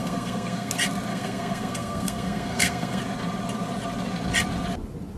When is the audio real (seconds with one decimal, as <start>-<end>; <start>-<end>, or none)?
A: 0.7-1.1; 3.0-5.2